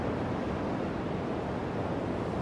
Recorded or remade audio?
recorded